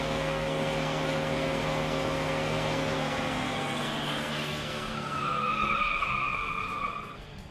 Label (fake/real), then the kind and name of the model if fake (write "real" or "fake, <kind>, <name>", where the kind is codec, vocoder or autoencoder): fake, codec, SNAC